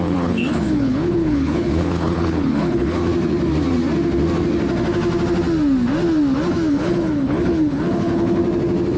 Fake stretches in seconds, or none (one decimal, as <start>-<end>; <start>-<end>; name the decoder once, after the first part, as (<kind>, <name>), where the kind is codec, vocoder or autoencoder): 0.0-3.0 (codec, HILCodec); 6.7-8.4